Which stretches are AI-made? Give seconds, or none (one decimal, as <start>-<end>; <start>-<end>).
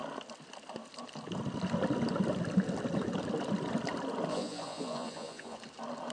4.3-5.6